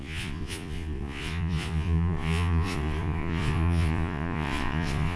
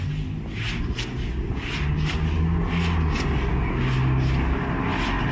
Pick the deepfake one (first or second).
first